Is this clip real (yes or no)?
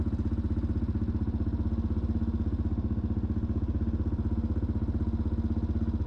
yes